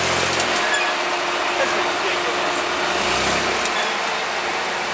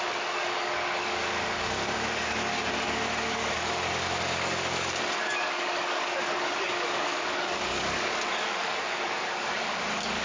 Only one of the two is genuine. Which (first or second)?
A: first